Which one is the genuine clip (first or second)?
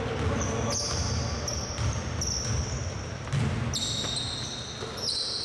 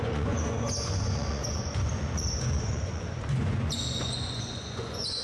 first